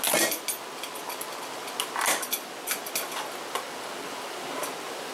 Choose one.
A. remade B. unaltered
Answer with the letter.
B